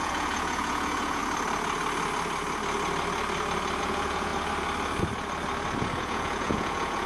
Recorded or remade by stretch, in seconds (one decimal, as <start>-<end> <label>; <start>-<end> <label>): 0.0-1.2 remade; 1.2-3.8 recorded; 3.8-4.3 remade; 4.3-6.0 recorded; 6.0-7.1 remade